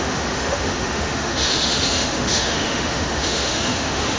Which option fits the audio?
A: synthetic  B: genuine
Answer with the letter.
A